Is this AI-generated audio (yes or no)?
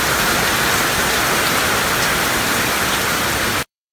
yes